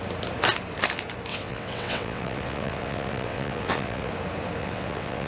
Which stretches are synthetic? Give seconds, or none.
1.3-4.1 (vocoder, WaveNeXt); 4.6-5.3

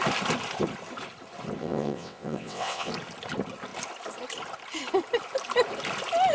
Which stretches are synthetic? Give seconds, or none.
1.6-2.9 (vocoder, WaveNeXt)